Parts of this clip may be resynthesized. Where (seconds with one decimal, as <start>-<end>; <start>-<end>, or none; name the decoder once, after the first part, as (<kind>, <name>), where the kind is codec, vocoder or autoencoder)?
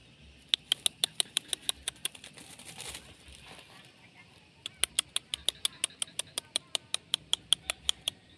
none